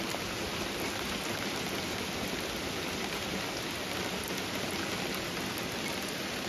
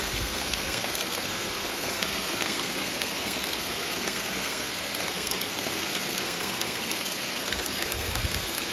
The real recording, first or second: first